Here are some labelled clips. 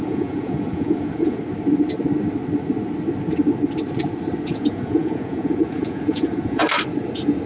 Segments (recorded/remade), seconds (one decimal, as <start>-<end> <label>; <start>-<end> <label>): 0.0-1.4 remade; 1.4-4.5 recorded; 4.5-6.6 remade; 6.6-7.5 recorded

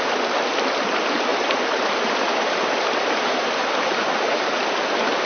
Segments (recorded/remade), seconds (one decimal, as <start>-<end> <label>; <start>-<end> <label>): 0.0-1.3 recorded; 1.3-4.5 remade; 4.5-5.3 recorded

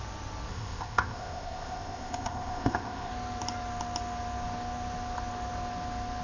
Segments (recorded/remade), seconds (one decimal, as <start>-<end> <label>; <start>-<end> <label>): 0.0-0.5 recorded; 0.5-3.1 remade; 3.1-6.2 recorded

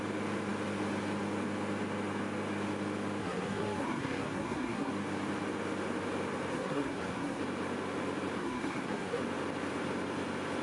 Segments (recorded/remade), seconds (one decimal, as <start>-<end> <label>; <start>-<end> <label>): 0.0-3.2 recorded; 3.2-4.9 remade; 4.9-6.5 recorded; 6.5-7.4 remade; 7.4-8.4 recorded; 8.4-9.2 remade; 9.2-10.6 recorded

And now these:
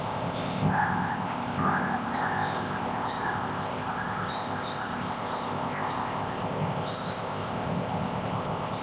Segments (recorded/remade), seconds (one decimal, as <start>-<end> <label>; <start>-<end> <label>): 0.0-8.8 remade

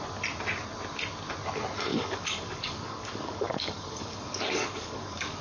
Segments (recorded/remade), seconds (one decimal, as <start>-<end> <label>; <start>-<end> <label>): 0.0-1.9 recorded; 1.9-5.4 remade

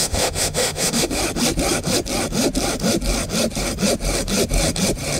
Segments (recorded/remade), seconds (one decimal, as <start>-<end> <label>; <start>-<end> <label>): 0.0-1.2 remade; 1.2-5.2 recorded

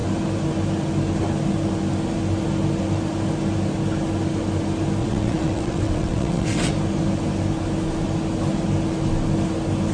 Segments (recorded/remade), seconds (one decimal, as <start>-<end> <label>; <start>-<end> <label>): 0.0-5.0 recorded; 5.0-6.7 remade; 6.7-9.9 recorded